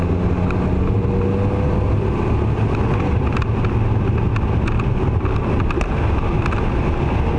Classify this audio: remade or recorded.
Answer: recorded